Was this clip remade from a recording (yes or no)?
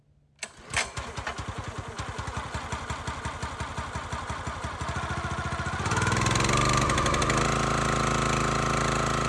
no